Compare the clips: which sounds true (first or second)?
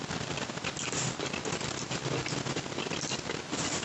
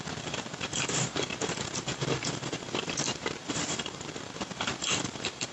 first